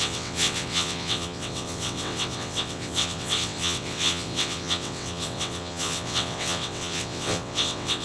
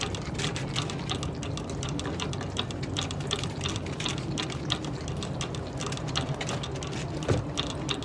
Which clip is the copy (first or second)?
first